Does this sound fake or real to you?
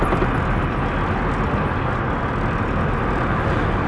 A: real